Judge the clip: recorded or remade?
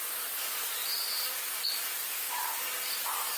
recorded